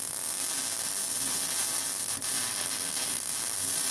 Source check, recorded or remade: recorded